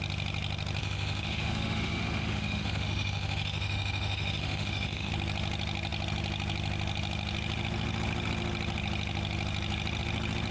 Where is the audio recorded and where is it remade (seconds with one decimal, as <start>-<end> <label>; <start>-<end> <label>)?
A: 0.0-0.8 recorded; 0.8-5.1 remade; 5.1-10.5 recorded